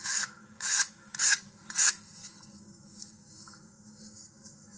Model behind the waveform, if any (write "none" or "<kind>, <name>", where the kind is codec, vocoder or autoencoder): autoencoder, DAC-VAE